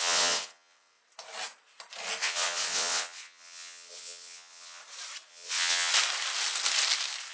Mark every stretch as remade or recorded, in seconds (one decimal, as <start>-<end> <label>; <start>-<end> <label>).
0.0-1.0 remade; 1.0-2.2 recorded; 2.2-4.8 remade; 4.8-5.3 recorded; 5.3-5.9 remade; 5.9-7.3 recorded